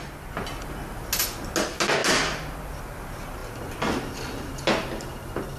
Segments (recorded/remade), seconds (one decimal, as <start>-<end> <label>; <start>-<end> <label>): 0.0-5.6 recorded